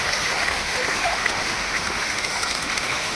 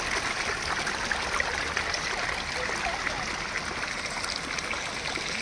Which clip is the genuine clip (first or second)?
second